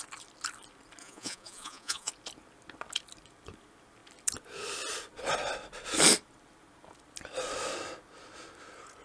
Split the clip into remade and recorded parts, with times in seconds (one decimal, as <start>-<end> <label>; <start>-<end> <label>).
0.0-1.0 recorded; 1.0-2.1 remade; 2.1-9.0 recorded